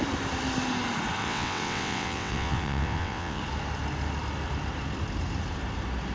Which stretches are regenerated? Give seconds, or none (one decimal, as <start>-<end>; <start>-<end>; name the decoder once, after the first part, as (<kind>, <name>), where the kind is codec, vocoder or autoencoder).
1.2-3.4 (vocoder, WaveNeXt)